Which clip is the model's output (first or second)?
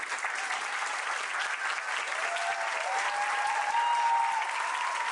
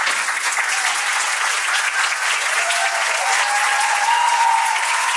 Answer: second